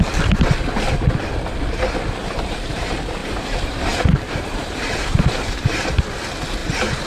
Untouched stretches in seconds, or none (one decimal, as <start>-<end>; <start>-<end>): 0.0-3.2; 6.0-6.6